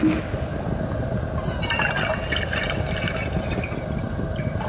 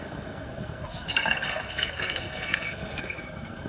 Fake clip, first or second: second